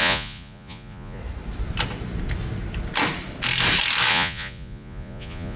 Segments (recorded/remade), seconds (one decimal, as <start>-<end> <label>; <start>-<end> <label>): 0.0-1.2 remade; 1.2-4.1 recorded; 4.1-5.6 remade